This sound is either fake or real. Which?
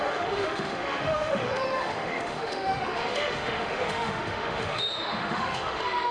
fake